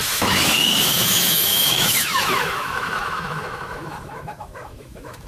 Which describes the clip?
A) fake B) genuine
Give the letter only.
A